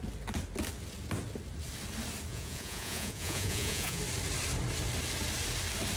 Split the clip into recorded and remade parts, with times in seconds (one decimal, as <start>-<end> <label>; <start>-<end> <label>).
0.0-2.3 recorded; 2.3-4.0 remade; 4.0-6.0 recorded